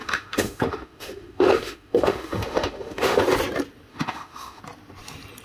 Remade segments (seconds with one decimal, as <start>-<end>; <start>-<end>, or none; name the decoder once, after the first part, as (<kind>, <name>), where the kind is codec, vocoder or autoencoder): 0.0-3.2 (autoencoder, DAC-VAE); 3.9-4.6